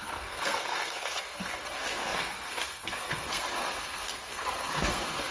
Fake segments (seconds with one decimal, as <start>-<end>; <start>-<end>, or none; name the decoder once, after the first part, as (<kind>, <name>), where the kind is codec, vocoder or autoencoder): 0.0-5.3 (codec, SNAC)